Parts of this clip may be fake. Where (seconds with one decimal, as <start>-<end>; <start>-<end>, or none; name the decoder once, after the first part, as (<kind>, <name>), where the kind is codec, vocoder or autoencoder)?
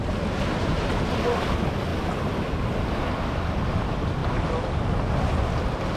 none